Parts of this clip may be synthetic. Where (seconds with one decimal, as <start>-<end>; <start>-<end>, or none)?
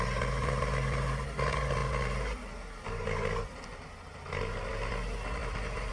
none